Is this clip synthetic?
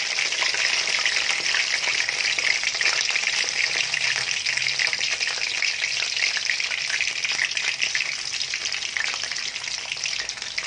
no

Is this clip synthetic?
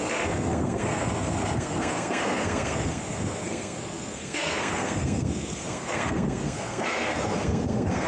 yes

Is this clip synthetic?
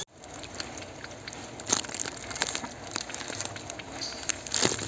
no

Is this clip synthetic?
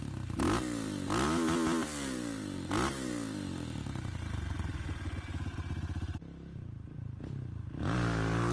no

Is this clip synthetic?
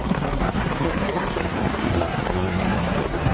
yes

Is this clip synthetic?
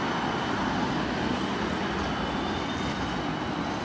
no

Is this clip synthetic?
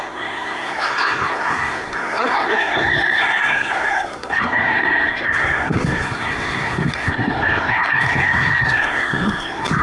yes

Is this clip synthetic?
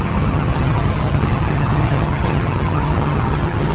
yes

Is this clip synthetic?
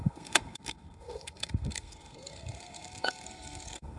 yes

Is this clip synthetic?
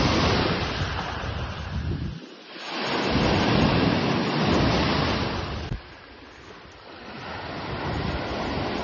no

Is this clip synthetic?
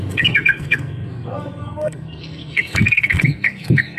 yes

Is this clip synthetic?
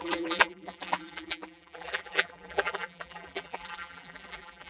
yes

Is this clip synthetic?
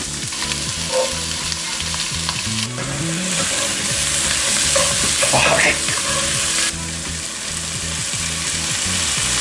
no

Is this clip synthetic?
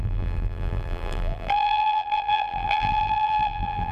yes